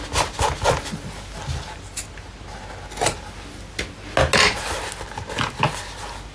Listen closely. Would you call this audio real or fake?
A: real